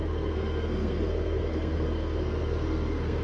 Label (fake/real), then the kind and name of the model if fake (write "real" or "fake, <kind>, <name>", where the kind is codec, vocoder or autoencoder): fake, codec, SNAC